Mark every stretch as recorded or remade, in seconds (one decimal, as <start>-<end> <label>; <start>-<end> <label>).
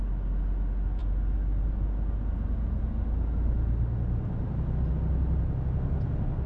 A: 0.0-6.5 recorded